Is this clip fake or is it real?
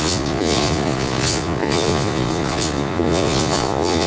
fake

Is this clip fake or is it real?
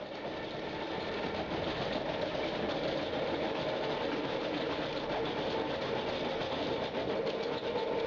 real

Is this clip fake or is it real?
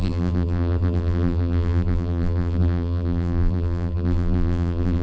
fake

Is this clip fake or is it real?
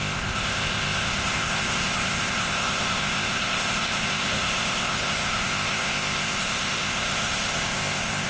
fake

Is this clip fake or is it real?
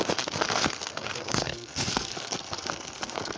fake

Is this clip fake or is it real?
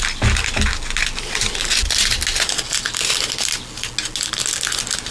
real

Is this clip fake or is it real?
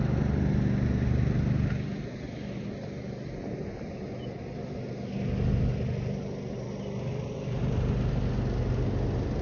real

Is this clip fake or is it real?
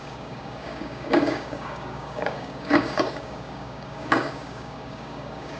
fake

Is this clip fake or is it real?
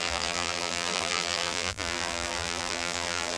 fake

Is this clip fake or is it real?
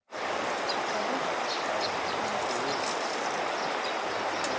fake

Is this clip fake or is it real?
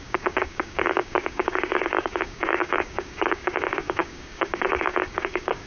fake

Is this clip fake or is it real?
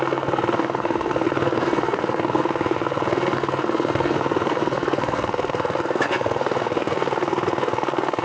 fake